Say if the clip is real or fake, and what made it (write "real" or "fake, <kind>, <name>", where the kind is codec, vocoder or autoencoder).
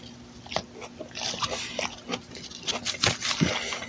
fake, vocoder, BigVGAN v2